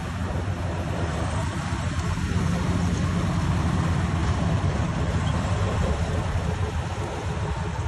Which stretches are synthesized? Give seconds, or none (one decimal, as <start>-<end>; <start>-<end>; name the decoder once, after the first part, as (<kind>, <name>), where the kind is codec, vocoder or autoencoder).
4.2-6.1 (vocoder, BigVGAN v2)